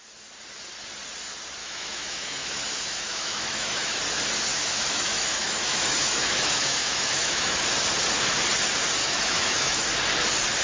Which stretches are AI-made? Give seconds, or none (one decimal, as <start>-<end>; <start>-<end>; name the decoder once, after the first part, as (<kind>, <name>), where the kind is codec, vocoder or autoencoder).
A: 1.6-4.0 (autoencoder, DAC-VAE); 4.5-7.6; 9.0-9.9